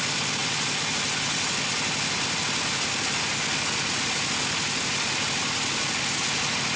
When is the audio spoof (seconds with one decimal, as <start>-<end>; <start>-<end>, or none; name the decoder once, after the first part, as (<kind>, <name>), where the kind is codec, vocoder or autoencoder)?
none